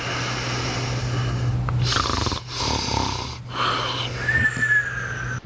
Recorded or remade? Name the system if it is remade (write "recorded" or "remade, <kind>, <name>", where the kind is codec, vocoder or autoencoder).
recorded